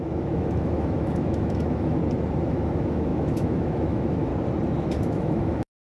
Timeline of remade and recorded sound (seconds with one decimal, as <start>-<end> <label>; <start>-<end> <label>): 0.0-2.0 remade; 2.0-2.5 recorded; 2.5-4.3 remade; 4.3-4.8 recorded; 4.8-5.8 remade